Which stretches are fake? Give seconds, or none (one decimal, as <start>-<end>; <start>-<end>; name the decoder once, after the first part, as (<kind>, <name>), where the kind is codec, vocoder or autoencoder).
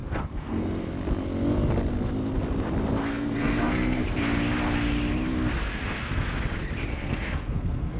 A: 0.0-0.9 (codec, SNAC); 3.1-4.0; 5.7-6.3; 6.9-8.0